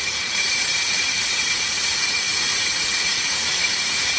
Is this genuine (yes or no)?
no